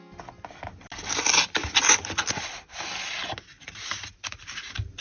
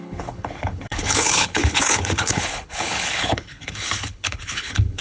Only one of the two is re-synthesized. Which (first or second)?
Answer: second